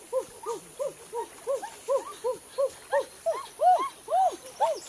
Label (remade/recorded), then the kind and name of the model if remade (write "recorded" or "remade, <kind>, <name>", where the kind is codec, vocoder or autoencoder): recorded